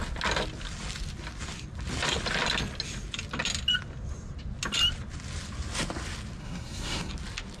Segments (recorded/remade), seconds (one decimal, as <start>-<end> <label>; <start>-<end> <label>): 0.0-6.4 recorded; 6.4-7.1 remade; 7.1-7.6 recorded